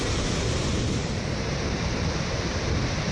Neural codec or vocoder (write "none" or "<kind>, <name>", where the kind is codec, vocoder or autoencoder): vocoder, BigVGAN v2